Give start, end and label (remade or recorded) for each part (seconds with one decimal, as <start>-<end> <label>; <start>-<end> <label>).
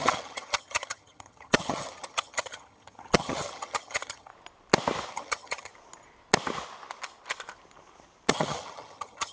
0.0-4.3 remade; 4.3-5.1 recorded; 5.1-5.7 remade; 5.7-8.3 recorded; 8.3-9.3 remade